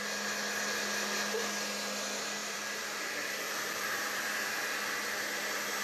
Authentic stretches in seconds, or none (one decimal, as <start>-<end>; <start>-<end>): 0.0-2.4; 4.6-5.8